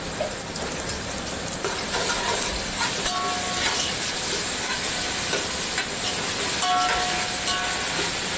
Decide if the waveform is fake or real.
real